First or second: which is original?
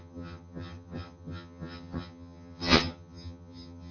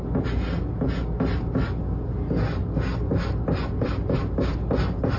second